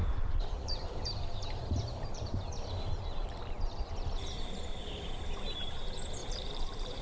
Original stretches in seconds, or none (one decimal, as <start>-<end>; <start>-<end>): 4.2-4.7; 5.2-6.2